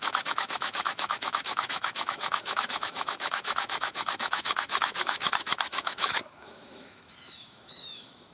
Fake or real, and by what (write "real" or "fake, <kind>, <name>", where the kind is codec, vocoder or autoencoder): fake, autoencoder, DAC-VAE